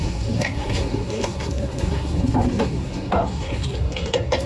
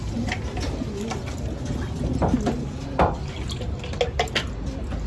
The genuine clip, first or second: second